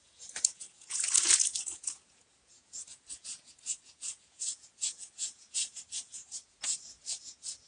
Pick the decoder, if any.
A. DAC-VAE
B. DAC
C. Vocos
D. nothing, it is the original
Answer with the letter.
C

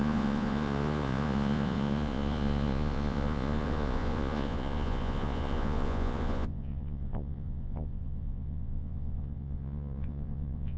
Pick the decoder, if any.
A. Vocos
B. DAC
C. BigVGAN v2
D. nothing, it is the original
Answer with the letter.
A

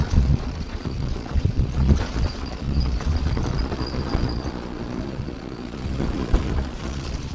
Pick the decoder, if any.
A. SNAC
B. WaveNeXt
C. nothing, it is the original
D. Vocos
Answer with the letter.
D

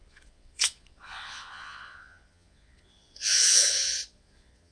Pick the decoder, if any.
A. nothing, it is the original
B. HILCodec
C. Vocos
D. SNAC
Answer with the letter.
C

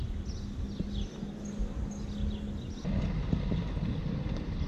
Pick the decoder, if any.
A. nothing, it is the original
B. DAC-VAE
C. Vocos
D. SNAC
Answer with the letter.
A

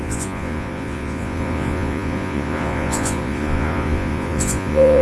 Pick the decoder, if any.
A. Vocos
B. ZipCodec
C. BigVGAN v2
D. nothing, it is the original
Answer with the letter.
A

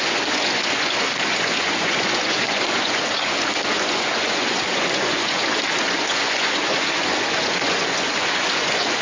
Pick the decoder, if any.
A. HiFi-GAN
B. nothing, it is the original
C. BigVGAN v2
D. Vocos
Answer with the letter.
D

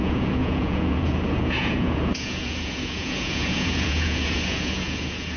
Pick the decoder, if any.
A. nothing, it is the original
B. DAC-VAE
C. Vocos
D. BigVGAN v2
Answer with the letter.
C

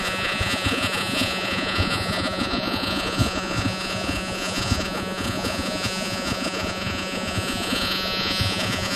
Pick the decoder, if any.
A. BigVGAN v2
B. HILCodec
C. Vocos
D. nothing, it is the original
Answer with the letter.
C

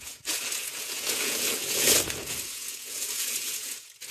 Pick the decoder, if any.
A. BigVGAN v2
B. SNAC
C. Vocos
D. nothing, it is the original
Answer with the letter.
C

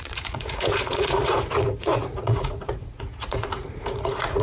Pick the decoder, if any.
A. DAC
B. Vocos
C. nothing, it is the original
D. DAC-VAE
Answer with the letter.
B